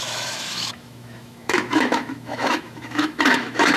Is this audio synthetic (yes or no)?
yes